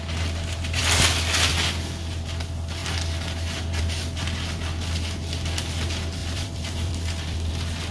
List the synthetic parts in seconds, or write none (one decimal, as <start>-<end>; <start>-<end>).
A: 6.2-7.5